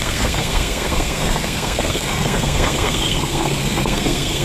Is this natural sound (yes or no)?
no